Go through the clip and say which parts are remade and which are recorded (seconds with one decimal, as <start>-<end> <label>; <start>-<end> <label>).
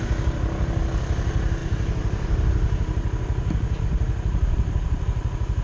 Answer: 0.0-5.6 recorded